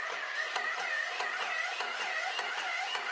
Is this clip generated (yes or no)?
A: yes